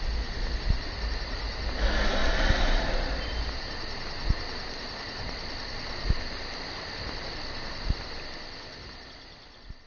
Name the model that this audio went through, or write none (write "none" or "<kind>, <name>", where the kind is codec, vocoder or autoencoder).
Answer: none